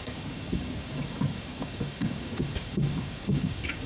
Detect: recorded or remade remade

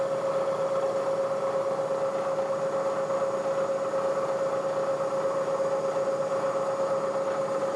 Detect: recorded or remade recorded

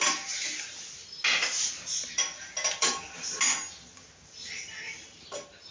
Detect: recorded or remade recorded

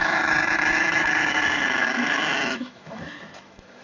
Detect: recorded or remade remade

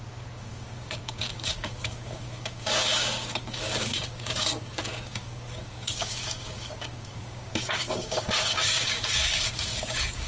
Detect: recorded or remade remade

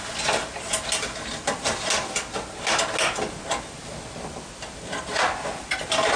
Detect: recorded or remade recorded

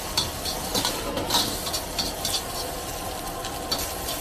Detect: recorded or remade recorded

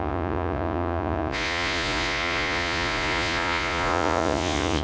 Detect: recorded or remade remade